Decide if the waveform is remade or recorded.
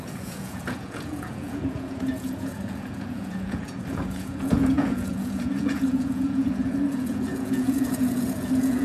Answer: remade